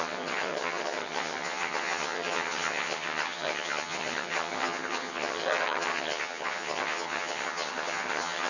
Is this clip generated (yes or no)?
yes